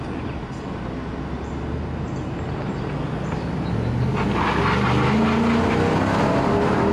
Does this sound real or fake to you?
real